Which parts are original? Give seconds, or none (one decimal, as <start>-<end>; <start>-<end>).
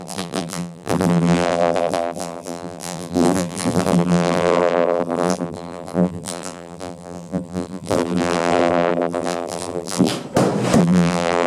10.1-10.8